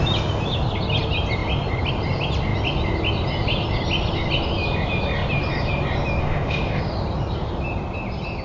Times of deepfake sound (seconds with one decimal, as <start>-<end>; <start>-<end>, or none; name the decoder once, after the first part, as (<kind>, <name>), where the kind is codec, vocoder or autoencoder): 6.2-6.8 (autoencoder, DAC-VAE)

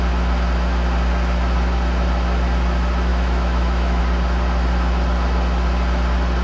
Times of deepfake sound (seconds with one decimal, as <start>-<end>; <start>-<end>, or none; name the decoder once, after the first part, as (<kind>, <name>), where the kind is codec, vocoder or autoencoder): 3.1-4.0 (autoencoder, DAC-VAE)

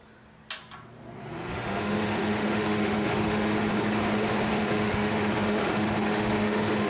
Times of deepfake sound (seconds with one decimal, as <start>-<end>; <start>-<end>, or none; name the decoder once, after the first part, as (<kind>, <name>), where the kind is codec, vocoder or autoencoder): 1.5-3.5 (autoencoder, DAC-VAE); 4.5-6.9

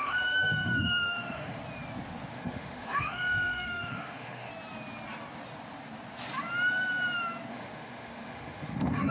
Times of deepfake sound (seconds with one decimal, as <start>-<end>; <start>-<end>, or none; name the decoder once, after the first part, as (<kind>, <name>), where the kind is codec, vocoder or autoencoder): 0.0-1.6 (autoencoder, DAC-VAE); 2.3-4.5; 7.5-9.1

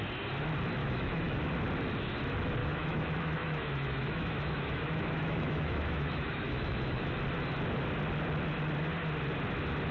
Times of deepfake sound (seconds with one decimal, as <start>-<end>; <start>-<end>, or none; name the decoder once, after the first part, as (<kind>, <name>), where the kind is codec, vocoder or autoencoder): 0.8-1.4 (autoencoder, DAC-VAE); 2.6-7.0

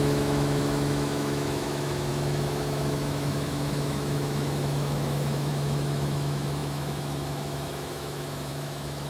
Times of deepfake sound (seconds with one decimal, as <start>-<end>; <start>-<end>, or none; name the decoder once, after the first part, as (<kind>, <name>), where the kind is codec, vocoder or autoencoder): 0.0-9.1 (autoencoder, DAC-VAE)